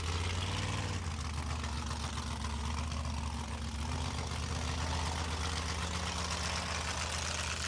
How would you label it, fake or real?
real